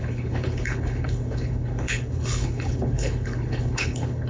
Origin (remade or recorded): remade